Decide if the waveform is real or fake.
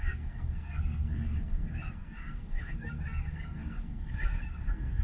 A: fake